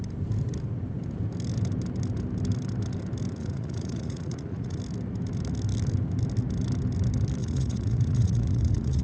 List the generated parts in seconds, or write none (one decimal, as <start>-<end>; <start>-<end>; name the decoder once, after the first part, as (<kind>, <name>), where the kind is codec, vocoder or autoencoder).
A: 3.4-4.8 (vocoder, Vocos); 7.4-9.0